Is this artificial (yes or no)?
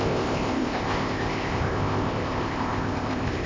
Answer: yes